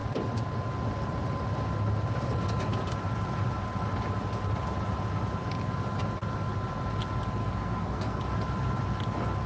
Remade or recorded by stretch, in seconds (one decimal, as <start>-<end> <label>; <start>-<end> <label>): 0.0-7.4 recorded; 7.4-8.2 remade; 8.2-9.5 recorded